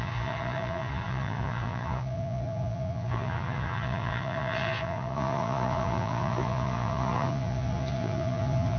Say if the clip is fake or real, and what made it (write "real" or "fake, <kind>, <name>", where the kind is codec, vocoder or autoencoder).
fake, vocoder, Vocos